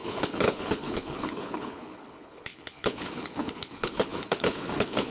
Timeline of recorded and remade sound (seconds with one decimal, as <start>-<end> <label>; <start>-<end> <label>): 0.0-5.1 remade

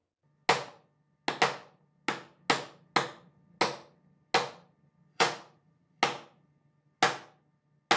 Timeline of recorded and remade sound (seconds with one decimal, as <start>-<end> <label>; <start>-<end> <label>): 0.0-5.1 recorded; 5.1-6.0 remade; 6.0-8.0 recorded

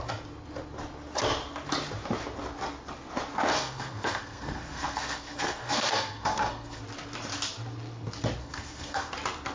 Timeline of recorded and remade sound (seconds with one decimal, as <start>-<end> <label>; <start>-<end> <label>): 0.0-3.5 recorded; 3.5-6.8 remade; 6.8-8.4 recorded; 8.4-9.1 remade; 9.1-9.5 recorded

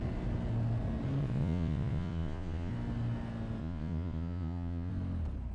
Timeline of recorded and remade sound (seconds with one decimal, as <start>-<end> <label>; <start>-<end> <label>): 0.0-1.2 recorded; 1.2-2.7 remade; 2.7-3.6 recorded; 3.6-4.9 remade; 4.9-5.5 recorded

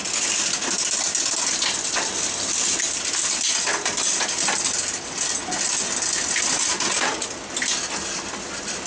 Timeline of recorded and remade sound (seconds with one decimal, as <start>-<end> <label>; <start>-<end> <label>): 0.0-8.9 remade

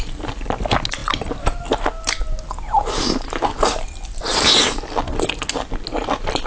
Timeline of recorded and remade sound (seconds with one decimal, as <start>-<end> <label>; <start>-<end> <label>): 0.0-6.5 recorded

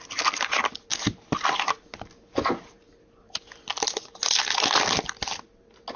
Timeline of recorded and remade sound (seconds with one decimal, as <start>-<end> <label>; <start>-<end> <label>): 0.0-6.0 recorded